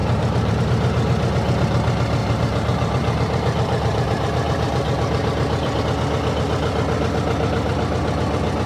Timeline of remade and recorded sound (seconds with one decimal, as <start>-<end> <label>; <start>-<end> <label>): 0.0-0.6 remade; 0.6-2.2 recorded; 2.2-5.8 remade; 5.8-8.7 recorded